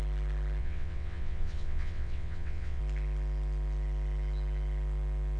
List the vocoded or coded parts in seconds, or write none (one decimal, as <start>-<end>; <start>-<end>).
0.6-2.8